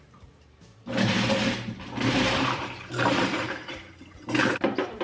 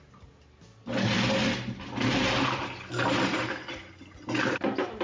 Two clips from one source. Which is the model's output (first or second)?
first